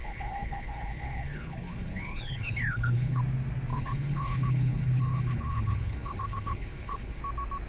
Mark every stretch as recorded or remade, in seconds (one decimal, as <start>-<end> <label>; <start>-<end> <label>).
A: 0.0-3.2 remade; 3.2-3.7 recorded; 3.7-7.2 remade; 7.2-7.7 recorded